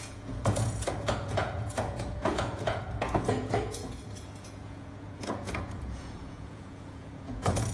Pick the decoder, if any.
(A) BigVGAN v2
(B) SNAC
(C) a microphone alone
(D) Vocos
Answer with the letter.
D